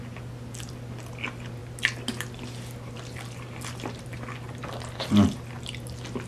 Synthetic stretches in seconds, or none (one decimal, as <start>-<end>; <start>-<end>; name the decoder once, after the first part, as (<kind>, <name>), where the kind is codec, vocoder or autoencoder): none